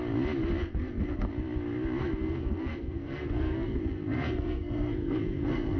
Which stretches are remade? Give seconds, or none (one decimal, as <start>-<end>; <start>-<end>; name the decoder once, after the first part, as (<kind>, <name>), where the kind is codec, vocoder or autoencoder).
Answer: 0.6-1.3 (codec, SNAC); 2.0-5.8